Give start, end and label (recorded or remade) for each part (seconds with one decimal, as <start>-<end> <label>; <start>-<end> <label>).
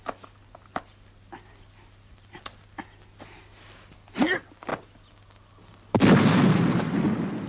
0.0-7.5 recorded